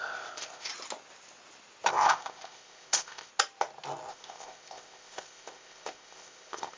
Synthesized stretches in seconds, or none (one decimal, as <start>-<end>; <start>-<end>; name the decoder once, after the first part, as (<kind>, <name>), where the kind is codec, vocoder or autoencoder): 0.0-0.7 (codec, ZipCodec); 1.9-3.3; 4.1-6.8

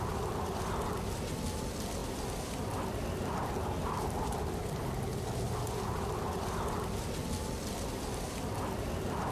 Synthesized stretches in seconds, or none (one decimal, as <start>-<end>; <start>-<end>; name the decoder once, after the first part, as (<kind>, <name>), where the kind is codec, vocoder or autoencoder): none

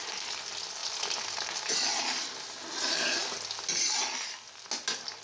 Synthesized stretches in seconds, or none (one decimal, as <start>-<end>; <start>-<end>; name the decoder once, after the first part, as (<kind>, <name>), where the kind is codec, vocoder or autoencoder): none

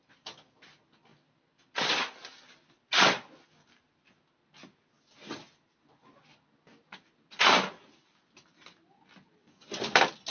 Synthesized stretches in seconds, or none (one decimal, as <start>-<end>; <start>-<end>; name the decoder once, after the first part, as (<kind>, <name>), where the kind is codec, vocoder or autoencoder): none

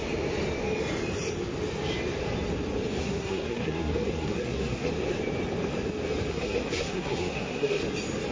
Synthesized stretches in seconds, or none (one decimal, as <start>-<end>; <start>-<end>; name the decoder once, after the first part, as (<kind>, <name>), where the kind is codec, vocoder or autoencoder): 3.0-4.9 (codec, SNAC); 6.3-7.8

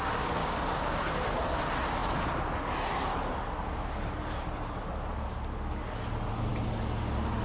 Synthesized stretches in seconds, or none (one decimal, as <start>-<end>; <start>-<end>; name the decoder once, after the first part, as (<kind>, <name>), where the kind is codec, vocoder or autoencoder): 0.4-1.0 (codec, DAC)

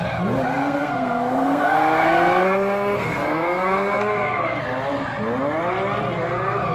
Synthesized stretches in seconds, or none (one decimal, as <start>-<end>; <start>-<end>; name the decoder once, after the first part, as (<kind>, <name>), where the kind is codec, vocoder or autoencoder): 0.6-4.6 (codec, SNAC)